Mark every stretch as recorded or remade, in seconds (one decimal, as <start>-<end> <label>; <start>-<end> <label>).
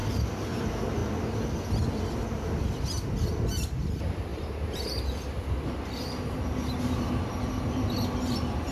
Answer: 0.0-0.6 remade; 0.6-4.3 recorded; 4.3-5.0 remade; 5.0-8.7 recorded